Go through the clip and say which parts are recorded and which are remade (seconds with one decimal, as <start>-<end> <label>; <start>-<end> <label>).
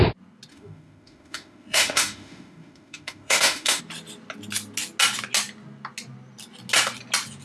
0.0-0.5 recorded; 0.5-3.8 remade; 3.8-7.4 recorded